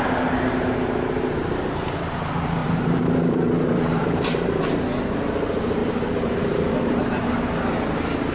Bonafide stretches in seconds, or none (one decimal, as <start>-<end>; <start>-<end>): 0.0-2.6; 4.6-5.8; 7.2-8.3